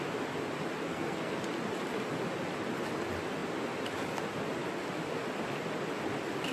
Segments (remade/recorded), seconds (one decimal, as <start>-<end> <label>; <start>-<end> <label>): 0.0-0.9 recorded; 0.9-1.4 remade; 1.4-6.5 recorded